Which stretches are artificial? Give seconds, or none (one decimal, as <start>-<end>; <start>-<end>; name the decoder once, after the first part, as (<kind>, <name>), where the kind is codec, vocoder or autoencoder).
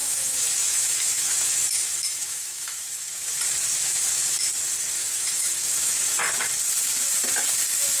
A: 0.0-3.4 (autoencoder, DAC-VAE); 3.8-4.5; 5.0-6.2